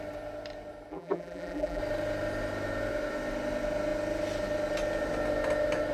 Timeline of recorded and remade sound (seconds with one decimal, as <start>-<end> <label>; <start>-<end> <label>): 0.0-0.9 recorded; 0.9-1.8 remade; 1.8-5.9 recorded